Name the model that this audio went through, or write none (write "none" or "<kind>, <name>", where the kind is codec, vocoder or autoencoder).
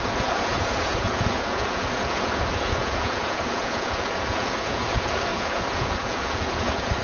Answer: vocoder, Vocos